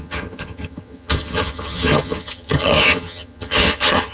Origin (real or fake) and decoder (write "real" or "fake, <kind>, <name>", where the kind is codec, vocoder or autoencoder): fake, vocoder, HiFi-GAN